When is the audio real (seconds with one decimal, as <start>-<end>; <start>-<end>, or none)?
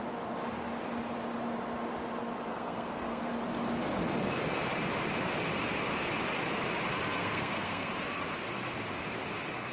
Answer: 0.0-2.5; 3.3-7.2; 7.9-9.7